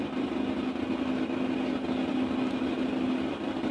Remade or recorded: recorded